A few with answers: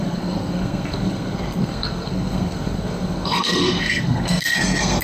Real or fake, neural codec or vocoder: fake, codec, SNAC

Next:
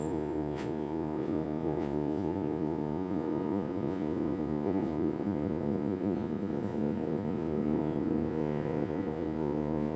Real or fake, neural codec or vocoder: fake, vocoder, Vocos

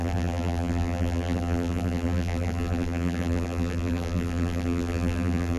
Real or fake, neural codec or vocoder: fake, vocoder, BigVGAN v2